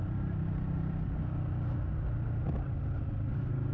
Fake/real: real